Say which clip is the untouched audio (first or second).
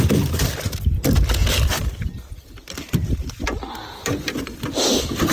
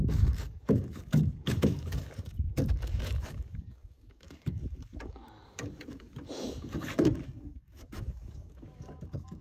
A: first